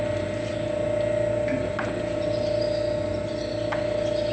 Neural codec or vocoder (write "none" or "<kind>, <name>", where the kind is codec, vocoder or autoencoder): none